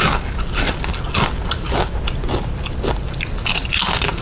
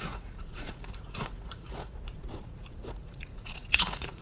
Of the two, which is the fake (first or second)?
second